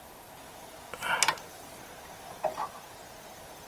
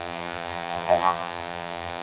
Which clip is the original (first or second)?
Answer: first